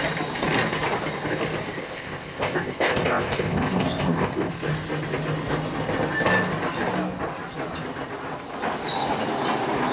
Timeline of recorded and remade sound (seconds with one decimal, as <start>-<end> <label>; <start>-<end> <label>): 0.0-1.8 recorded; 1.8-4.5 remade; 4.5-9.9 recorded